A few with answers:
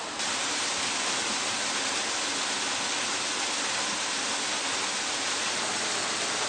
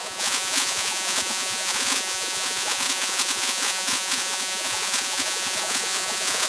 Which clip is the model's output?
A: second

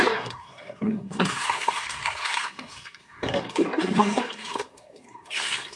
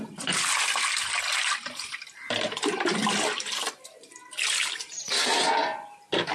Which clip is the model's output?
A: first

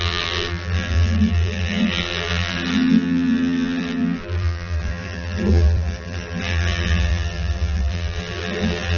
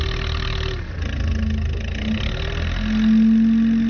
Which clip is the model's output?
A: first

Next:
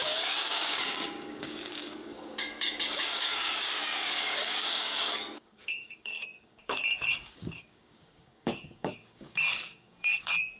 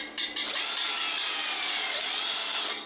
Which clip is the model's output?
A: first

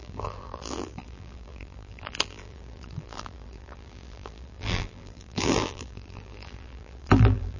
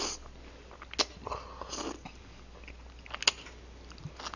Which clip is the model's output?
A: first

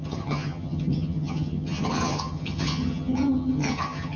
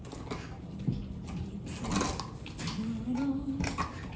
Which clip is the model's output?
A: first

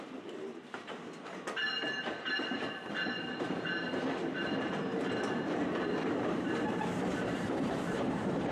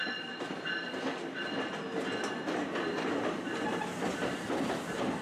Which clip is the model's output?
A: first